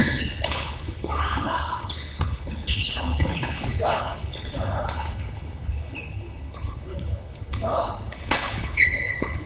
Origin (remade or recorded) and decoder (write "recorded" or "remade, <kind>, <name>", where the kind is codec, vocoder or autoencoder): remade, codec, HILCodec